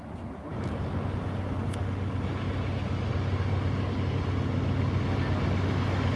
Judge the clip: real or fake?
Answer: real